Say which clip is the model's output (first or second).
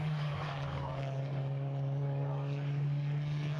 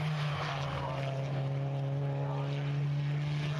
first